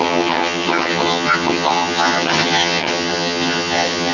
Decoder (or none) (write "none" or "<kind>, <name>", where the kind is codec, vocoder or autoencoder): vocoder, HiFi-GAN